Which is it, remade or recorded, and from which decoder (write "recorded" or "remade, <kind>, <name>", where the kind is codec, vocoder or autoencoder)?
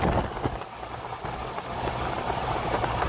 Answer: recorded